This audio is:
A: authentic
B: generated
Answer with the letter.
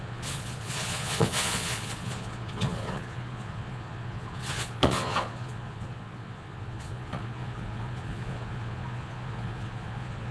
B